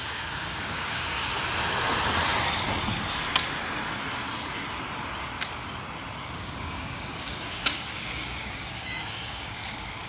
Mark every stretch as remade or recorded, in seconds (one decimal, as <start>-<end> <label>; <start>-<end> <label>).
0.0-1.2 remade; 1.2-6.2 recorded; 6.2-10.1 remade